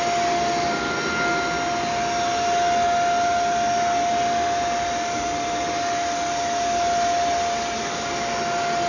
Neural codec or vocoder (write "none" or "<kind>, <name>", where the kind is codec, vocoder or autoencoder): none